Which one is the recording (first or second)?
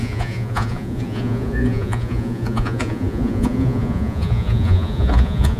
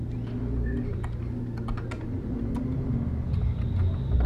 second